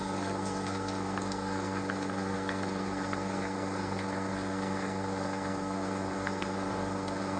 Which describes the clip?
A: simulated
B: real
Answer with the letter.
A